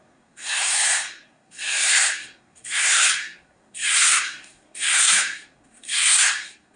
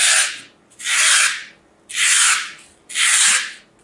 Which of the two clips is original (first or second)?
second